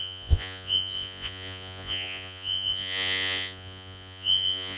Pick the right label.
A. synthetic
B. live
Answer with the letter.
A